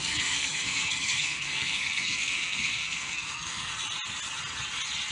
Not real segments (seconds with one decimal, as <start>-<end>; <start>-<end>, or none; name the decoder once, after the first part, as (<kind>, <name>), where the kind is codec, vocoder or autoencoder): 0.0-3.7 (codec, SNAC)